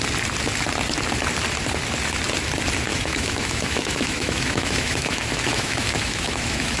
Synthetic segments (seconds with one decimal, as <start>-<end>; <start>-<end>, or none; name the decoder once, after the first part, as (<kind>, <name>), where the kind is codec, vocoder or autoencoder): 2.9-6.8 (autoencoder, DAC-VAE)